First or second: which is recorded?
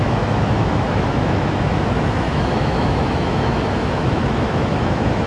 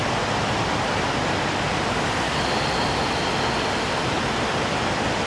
second